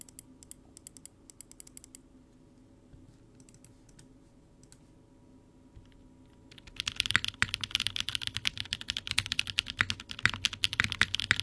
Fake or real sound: real